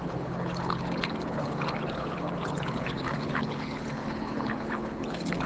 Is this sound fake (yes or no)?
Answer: yes